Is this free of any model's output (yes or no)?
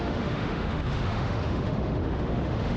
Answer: no